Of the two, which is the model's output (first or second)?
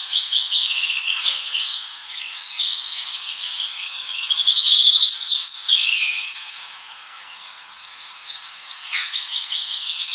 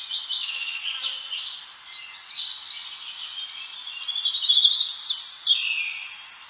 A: first